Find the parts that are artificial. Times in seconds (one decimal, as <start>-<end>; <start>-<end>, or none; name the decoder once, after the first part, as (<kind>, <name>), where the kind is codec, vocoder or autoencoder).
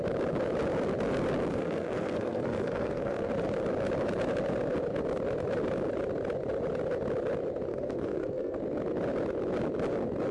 1.5-3.3 (codec, SNAC); 7.7-8.6